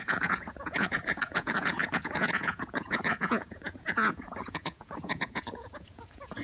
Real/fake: fake